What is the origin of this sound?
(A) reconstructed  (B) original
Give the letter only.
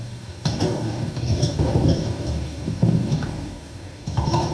A